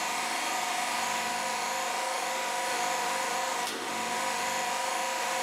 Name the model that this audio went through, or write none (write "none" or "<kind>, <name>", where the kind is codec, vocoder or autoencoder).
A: autoencoder, DAC-VAE